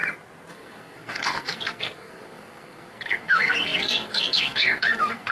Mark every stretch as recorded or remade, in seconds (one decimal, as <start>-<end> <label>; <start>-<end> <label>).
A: 0.0-0.5 recorded; 0.5-5.3 remade